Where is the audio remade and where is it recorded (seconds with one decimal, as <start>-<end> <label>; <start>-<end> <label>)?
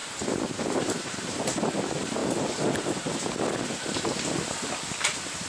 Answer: 0.0-1.4 remade; 1.4-5.5 recorded